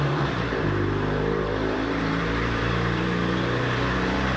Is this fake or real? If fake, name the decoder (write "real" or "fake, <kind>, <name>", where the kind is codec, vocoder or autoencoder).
fake, vocoder, BigVGAN v2